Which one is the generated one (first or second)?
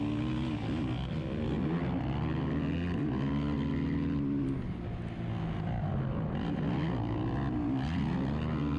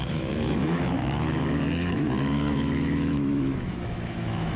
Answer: second